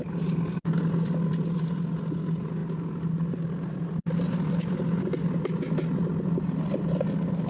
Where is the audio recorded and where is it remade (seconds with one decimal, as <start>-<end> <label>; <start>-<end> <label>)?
0.0-7.5 recorded